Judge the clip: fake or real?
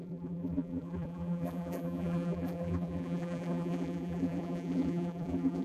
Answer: fake